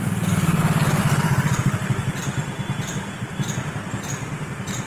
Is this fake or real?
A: real